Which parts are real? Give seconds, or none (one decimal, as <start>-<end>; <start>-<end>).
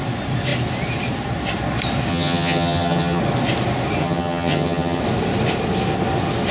0.0-2.1; 3.2-4.0; 5.0-6.5